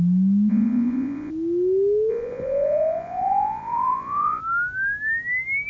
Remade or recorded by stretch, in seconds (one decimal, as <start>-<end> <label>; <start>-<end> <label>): 0.0-0.5 recorded; 0.5-1.3 remade; 1.3-2.1 recorded; 2.1-4.4 remade; 4.4-5.7 recorded

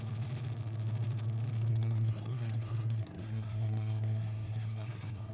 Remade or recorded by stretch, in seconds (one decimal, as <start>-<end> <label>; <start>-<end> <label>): 0.0-1.7 recorded; 1.7-5.3 remade

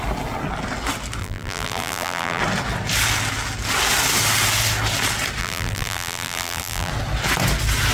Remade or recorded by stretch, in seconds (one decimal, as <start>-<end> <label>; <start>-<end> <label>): 0.0-1.2 recorded; 1.2-2.4 remade; 2.4-5.4 recorded; 5.4-6.9 remade; 6.9-7.9 recorded

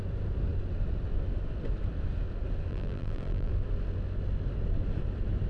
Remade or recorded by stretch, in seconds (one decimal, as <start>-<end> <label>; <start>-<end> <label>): 0.0-2.7 recorded; 2.7-3.5 remade; 3.5-5.5 recorded

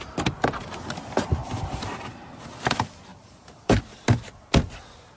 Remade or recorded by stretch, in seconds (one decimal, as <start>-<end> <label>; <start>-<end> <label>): 0.0-1.4 recorded; 1.4-2.4 remade; 2.4-3.1 recorded; 3.1-3.8 remade; 3.8-5.2 recorded

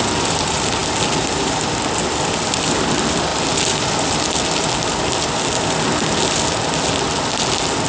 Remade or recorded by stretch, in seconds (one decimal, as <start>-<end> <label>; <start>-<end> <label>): 0.0-7.9 recorded